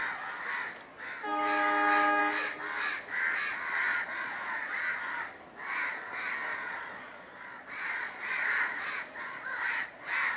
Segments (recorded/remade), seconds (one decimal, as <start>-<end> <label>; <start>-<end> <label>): 0.0-3.9 recorded; 3.9-4.9 remade; 4.9-6.5 recorded; 6.5-10.0 remade; 10.0-10.4 recorded